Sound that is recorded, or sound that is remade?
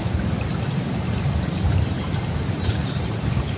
recorded